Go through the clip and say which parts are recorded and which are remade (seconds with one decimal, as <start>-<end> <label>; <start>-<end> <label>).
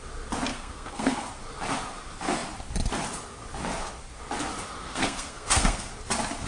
0.0-0.5 recorded; 0.5-1.3 remade; 1.3-4.8 recorded; 4.8-5.9 remade; 5.9-6.5 recorded